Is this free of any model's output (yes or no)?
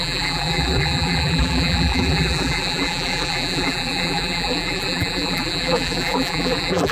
no